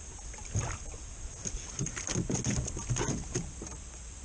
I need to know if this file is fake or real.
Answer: real